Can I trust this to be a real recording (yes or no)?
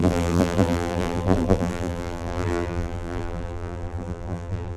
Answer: no